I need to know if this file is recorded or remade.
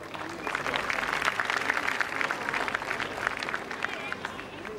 recorded